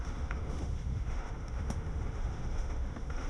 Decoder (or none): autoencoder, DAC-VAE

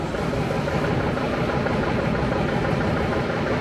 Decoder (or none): none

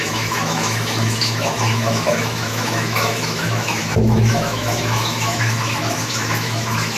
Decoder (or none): autoencoder, DAC-VAE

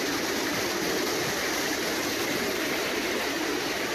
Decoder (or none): none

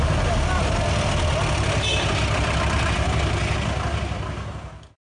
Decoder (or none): none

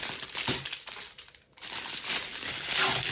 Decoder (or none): none